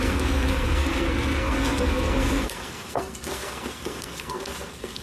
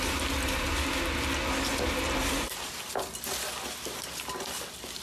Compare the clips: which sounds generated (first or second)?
first